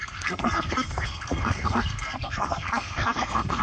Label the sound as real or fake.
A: fake